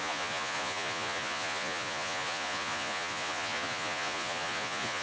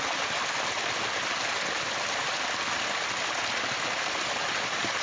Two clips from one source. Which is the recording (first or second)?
second